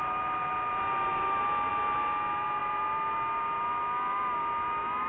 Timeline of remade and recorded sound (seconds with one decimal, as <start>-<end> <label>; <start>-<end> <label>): 0.0-5.1 recorded